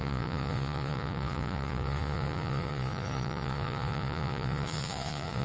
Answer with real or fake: fake